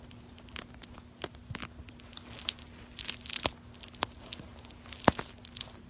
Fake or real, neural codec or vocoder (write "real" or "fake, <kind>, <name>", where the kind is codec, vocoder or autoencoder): real